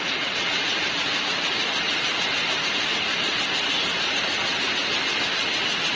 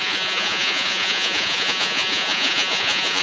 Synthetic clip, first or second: second